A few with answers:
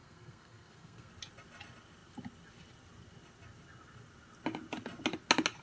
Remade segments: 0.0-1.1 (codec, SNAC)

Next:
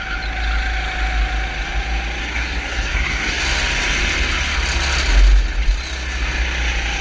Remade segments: 2.2-3.4 (codec, SNAC)

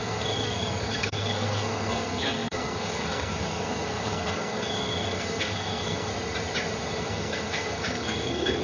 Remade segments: 0.0-6.1 (codec, SNAC); 7.0-8.6

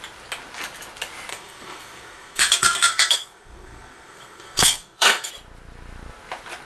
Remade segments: 1.3-5.3 (codec, SNAC)

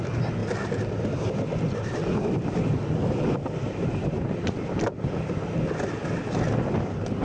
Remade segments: 3.6-4.4 (vocoder, BigVGAN v2)

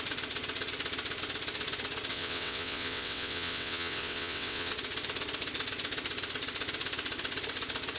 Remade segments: 2.1-4.7 (vocoder, WaveNeXt)

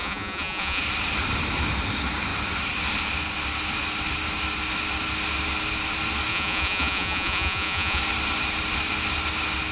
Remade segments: 0.0-0.8 (vocoder, Vocos); 6.3-8.0